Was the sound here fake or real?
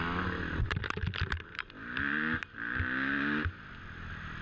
real